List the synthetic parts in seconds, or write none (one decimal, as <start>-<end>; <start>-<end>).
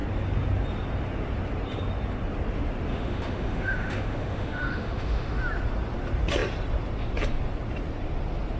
2.9-5.4